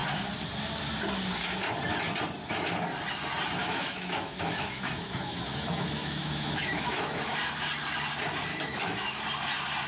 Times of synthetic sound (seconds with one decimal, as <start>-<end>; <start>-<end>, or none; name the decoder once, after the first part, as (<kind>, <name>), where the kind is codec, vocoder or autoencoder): 3.6-7.3 (autoencoder, DAC-VAE); 8.5-9.2

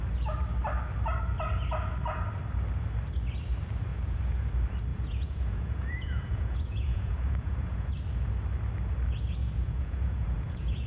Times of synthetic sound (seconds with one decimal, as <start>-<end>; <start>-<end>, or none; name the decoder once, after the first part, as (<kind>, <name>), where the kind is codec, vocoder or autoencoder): 3.9-4.5 (vocoder, Vocos); 4.9-7.9; 9.4-10.9

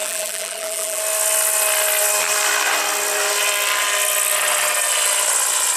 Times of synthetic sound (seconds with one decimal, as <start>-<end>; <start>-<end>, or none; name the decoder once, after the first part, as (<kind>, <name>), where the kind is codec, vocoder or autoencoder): 0.0-1.0 (vocoder, BigVGAN v2)